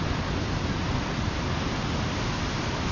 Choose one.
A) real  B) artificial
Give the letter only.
A